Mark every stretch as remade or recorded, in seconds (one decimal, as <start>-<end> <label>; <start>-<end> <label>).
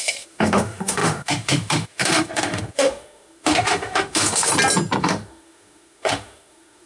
0.0-4.5 remade; 4.5-5.0 recorded; 5.0-6.9 remade